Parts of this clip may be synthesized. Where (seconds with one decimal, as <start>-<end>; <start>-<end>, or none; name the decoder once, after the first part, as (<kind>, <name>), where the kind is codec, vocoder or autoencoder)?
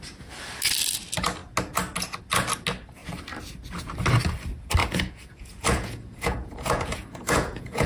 4.8-7.9 (vocoder, Vocos)